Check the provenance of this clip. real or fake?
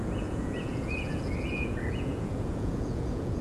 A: fake